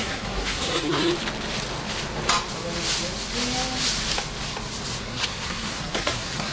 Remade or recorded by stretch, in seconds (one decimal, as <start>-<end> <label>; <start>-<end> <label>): 0.0-1.1 remade; 1.1-5.0 recorded; 5.0-6.5 remade